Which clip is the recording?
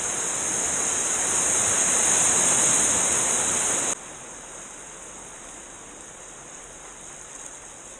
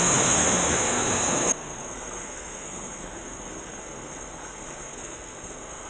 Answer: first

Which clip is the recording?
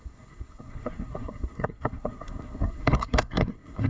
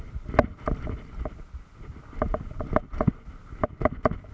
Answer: second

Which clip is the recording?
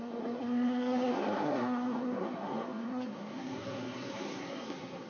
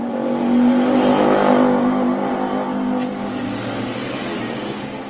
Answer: second